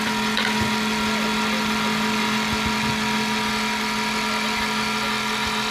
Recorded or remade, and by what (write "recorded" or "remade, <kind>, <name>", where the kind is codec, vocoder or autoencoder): recorded